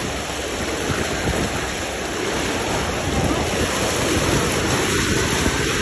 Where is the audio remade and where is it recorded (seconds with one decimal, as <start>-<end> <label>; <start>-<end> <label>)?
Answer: 0.0-5.8 recorded